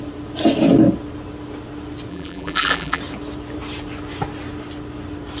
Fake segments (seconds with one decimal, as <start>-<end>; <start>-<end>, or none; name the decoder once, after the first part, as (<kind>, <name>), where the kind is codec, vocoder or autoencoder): 2.1-3.0 (vocoder, BigVGAN v2)

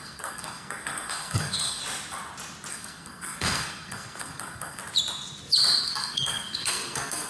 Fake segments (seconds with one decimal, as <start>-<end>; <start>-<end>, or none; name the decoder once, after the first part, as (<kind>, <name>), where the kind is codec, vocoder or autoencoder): 0.0-1.8 (codec, SNAC); 2.7-4.8; 5.8-7.3